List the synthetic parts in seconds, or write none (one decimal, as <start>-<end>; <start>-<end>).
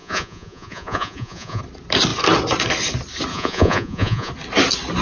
0.0-1.6; 3.3-4.3